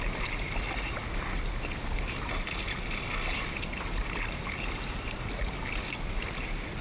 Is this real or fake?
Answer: real